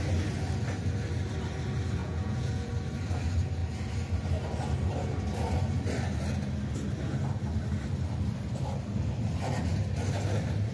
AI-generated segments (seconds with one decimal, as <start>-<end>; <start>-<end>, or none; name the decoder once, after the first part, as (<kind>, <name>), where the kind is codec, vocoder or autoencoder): 2.0-2.7 (vocoder, Vocos)